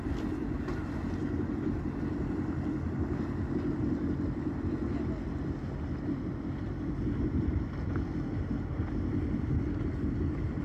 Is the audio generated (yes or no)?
no